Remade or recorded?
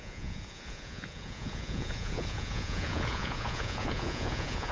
remade